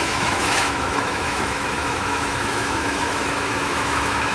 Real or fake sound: fake